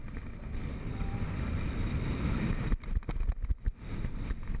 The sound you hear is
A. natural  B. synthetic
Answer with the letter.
A